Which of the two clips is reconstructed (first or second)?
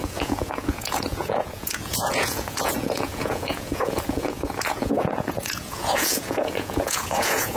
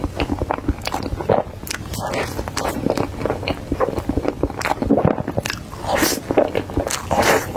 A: first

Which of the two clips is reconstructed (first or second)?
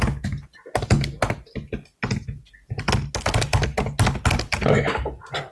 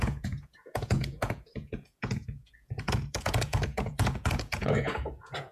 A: second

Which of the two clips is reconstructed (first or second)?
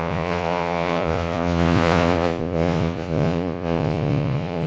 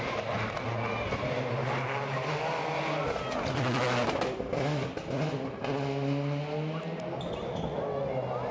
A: first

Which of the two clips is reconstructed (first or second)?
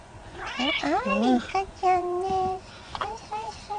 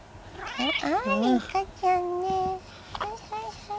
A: first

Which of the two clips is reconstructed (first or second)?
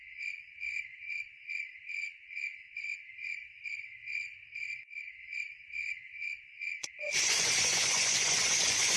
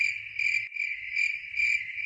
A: first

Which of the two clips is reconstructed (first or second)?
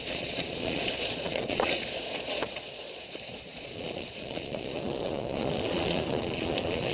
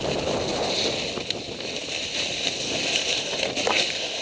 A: first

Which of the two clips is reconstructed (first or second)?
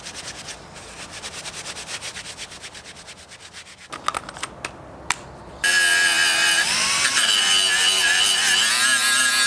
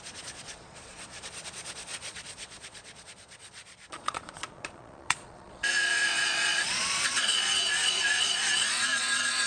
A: second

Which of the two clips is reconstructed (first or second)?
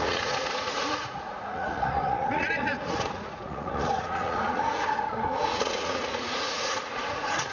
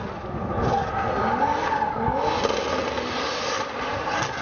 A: first